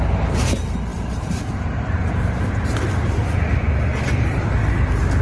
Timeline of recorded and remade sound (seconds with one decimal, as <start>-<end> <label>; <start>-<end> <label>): 0.0-4.6 remade; 4.6-5.2 recorded